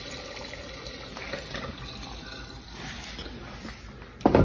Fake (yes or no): no